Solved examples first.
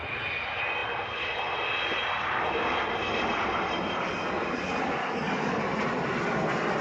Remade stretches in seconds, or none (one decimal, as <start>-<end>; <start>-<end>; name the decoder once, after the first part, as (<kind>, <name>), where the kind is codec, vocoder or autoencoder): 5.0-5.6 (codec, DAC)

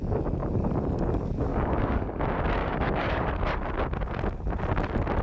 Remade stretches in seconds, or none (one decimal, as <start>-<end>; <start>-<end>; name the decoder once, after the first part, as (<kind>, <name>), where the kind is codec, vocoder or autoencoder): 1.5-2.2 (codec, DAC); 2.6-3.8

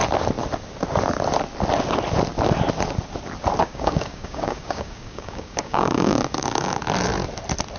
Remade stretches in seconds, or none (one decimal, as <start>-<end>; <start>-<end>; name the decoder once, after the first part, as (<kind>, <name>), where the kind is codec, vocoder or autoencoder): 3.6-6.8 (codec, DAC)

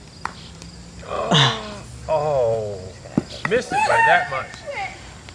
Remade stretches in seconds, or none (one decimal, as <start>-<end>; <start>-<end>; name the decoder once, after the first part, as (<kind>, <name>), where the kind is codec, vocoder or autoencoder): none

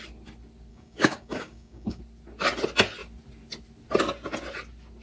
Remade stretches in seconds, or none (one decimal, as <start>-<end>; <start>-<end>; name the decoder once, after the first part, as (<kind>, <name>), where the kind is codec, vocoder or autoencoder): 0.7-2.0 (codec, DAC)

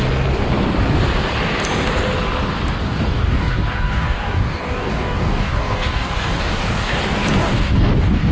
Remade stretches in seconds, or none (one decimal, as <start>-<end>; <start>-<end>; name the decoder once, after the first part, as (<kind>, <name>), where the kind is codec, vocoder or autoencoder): 2.8-7.0 (codec, DAC); 7.4-8.3

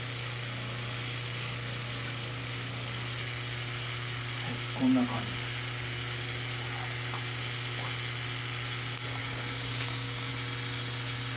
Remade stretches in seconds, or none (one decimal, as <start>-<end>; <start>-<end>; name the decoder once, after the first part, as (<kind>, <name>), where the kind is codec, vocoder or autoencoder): 9.2-10.3 (codec, DAC)

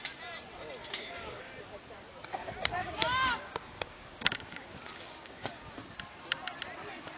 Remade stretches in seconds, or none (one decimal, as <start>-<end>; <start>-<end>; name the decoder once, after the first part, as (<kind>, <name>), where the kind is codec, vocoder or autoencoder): 0.8-1.5 (codec, DAC); 2.8-5.7